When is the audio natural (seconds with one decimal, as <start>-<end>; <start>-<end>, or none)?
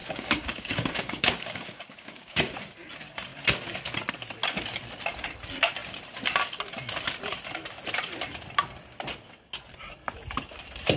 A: 2.5-11.0